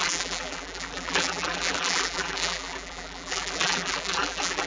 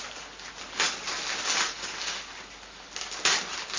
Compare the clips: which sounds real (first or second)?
second